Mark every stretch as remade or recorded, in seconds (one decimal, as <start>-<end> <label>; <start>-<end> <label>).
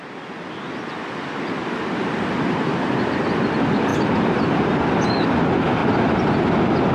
0.0-1.6 recorded; 1.6-3.1 remade; 3.1-3.9 recorded; 3.9-5.0 remade; 5.0-6.9 recorded